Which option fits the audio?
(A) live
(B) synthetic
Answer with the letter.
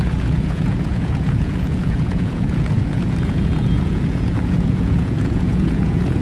B